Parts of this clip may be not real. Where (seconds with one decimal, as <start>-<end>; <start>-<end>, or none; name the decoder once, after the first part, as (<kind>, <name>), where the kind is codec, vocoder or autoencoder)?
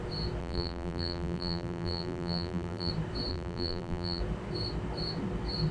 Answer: 0.4-2.9 (vocoder, BigVGAN v2); 3.3-4.2